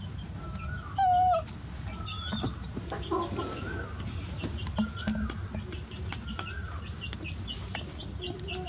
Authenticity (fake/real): real